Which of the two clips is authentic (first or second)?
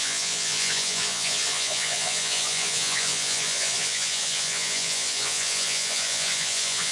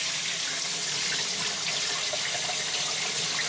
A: second